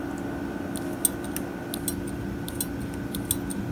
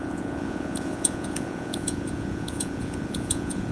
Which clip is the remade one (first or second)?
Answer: second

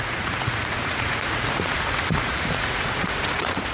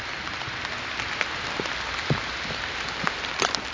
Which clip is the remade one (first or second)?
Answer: first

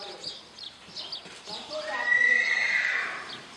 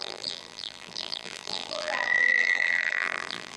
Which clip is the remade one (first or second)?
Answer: second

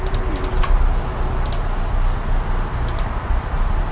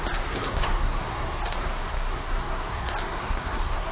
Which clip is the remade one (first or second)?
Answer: second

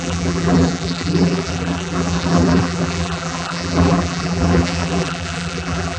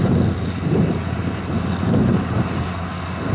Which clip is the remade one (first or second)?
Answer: first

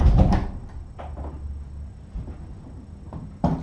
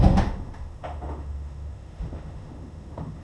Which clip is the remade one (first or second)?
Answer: second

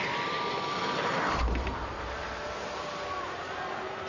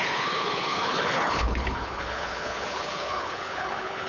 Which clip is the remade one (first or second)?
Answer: second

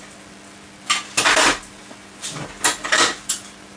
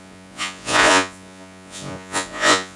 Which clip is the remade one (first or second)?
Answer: second